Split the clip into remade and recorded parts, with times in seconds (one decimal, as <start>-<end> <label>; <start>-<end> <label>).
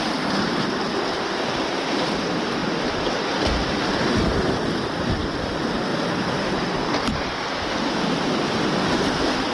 0.0-2.6 remade; 2.6-4.0 recorded; 4.0-5.9 remade; 5.9-9.0 recorded; 9.0-9.5 remade